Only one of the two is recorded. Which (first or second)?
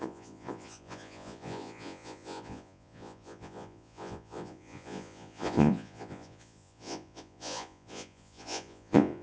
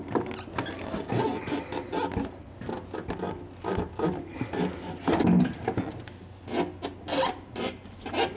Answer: second